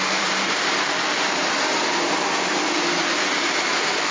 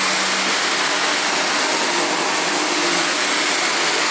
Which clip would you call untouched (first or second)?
second